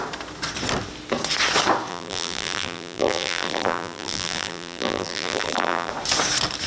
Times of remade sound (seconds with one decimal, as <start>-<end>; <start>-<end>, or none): 1.9-5.9